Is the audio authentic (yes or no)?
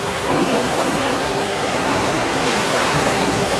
no